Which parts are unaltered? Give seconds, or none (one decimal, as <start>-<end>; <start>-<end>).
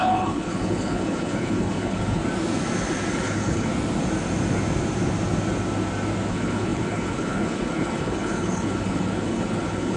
2.2-3.1; 3.7-6.3